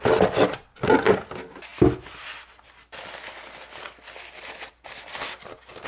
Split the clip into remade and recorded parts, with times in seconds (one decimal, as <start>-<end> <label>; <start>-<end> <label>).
0.0-5.9 recorded